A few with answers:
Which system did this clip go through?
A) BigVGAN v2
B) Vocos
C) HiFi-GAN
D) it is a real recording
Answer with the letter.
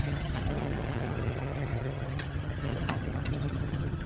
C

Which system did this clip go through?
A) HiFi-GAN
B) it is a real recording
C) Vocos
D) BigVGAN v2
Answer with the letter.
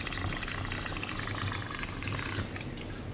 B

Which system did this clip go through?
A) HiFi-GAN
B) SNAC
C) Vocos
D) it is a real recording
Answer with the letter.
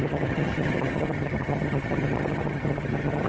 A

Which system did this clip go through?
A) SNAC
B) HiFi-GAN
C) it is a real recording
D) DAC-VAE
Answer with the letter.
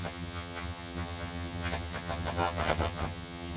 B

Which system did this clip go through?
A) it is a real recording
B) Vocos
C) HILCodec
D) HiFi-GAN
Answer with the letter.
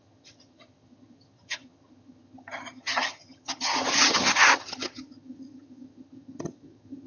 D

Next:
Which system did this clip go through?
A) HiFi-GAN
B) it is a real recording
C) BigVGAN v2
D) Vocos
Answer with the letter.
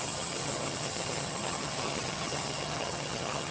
A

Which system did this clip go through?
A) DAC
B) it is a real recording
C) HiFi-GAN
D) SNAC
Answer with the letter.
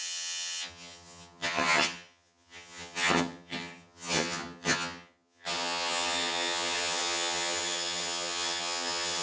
C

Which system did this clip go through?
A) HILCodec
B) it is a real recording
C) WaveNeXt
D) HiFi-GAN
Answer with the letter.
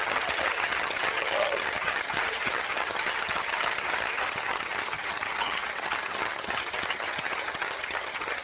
D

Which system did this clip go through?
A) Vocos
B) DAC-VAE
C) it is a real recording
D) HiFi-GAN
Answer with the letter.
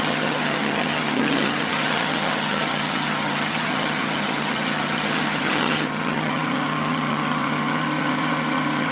D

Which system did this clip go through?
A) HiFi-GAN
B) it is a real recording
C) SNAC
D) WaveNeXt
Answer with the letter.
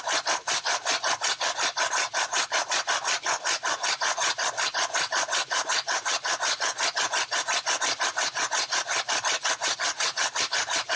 B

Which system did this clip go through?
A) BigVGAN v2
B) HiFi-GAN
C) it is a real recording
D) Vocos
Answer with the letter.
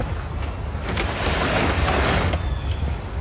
C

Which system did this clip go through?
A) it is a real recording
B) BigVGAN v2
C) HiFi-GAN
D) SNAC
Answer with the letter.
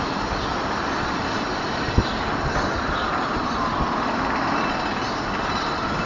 A